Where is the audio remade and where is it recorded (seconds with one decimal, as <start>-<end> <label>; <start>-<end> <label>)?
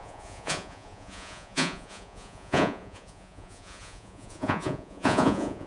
0.0-5.7 remade